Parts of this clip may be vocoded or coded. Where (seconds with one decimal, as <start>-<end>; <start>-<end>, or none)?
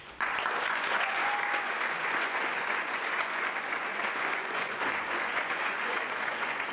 0.0-6.7